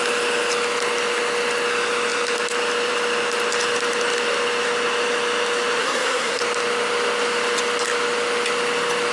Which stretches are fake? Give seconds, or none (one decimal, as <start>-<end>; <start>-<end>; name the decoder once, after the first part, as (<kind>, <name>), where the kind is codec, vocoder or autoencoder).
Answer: 5.8-6.4 (codec, SNAC)

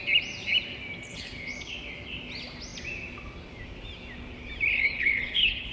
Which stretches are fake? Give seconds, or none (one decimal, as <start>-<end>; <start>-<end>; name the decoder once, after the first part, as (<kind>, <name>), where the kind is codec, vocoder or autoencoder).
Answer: 1.1-1.7 (codec, HILCodec); 4.7-5.7

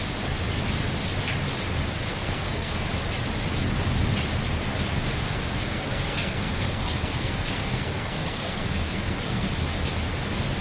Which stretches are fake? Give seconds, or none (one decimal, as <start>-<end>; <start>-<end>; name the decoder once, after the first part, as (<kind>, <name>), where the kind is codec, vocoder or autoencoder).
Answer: 2.1-2.7 (codec, SNAC); 5.2-9.5

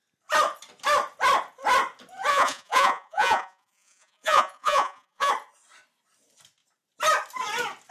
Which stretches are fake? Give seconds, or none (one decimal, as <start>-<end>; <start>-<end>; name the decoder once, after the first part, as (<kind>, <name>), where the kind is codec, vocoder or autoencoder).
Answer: 2.3-5.3 (vocoder, Vocos)

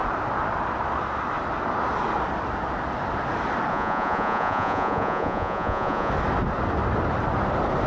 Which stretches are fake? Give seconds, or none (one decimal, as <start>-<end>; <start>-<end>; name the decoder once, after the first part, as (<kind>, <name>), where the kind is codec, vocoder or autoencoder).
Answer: 3.7-6.1 (vocoder, Vocos)